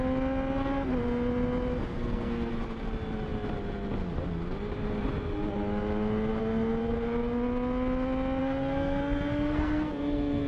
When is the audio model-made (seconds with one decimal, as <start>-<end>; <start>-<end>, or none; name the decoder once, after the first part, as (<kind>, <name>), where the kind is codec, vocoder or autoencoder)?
1.9-2.5 (codec, SNAC); 8.4-10.5